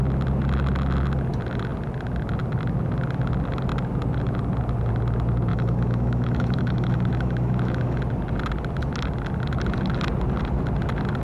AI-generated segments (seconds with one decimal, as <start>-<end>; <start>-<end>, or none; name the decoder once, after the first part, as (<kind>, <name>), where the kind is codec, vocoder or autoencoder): 5.5-8.0 (autoencoder, DAC-VAE)